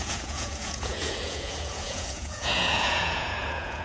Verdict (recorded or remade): remade